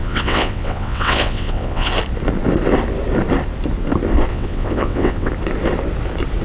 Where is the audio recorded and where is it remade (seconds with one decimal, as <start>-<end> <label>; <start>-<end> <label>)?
0.0-1.9 remade; 1.9-4.3 recorded; 4.3-5.3 remade; 5.3-6.4 recorded